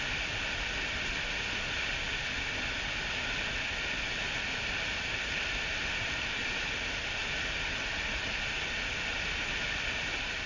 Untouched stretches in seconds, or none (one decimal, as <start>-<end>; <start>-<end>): 0.0-10.5